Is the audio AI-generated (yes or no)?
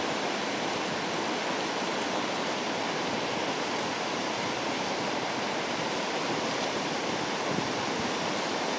no